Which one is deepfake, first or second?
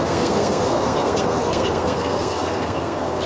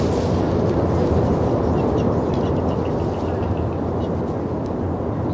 first